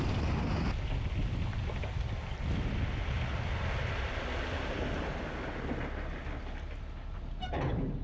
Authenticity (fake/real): real